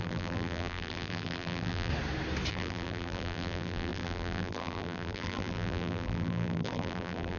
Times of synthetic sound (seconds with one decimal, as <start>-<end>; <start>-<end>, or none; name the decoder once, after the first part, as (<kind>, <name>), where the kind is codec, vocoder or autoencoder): 0.0-1.9 (vocoder, BigVGAN v2); 2.5-7.4